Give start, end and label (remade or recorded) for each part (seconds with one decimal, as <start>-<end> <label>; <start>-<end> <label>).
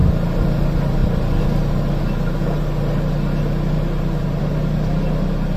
0.0-5.6 recorded